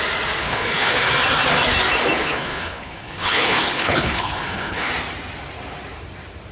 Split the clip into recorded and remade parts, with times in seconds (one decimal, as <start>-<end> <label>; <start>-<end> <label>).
0.0-0.4 recorded; 0.4-1.0 remade; 1.0-2.2 recorded; 2.2-4.9 remade; 4.9-6.5 recorded

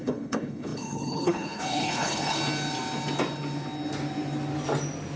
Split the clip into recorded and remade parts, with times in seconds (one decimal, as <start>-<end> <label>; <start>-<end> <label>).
0.0-2.4 remade; 2.4-5.2 recorded

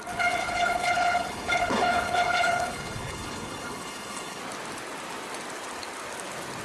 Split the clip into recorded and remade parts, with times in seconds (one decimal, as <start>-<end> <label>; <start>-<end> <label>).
0.0-0.4 recorded; 0.4-4.4 remade; 4.4-6.6 recorded

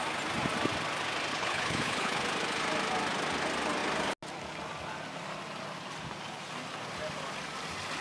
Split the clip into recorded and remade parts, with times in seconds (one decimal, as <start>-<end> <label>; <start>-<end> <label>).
0.0-1.3 recorded; 1.3-2.2 remade; 2.2-8.0 recorded

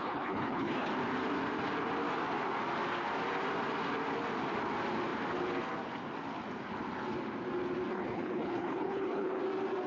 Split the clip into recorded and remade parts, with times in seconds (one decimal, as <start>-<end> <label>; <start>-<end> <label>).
0.0-0.9 remade; 0.9-7.9 recorded; 7.9-9.4 remade; 9.4-9.9 recorded